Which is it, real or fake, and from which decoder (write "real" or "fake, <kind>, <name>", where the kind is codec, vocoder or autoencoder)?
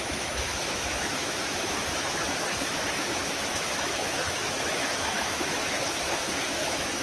fake, autoencoder, DAC-VAE